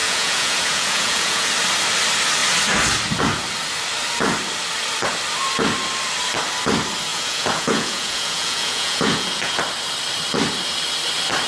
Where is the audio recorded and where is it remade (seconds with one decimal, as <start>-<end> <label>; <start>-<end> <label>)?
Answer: 0.0-1.5 remade; 1.5-7.1 recorded; 7.1-9.6 remade; 9.6-11.5 recorded